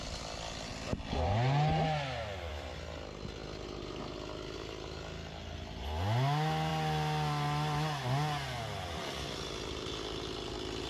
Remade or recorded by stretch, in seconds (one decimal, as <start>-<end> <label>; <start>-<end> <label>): 0.0-10.9 recorded